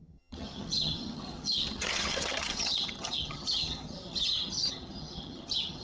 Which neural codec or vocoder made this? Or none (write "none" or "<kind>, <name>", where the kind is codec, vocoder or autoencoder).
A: vocoder, HiFi-GAN